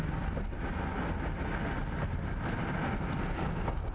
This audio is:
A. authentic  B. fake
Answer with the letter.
A